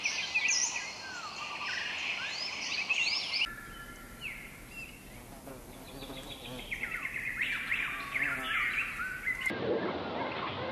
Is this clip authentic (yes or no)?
yes